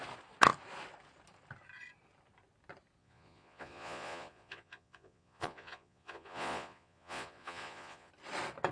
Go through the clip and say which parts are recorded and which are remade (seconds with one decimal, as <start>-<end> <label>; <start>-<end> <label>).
0.0-3.0 recorded; 3.0-8.1 remade; 8.1-8.7 recorded